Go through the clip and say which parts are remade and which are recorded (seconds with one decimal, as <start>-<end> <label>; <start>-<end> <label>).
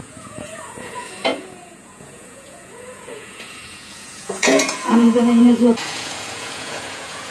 0.0-7.3 remade